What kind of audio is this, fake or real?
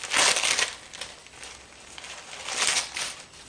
real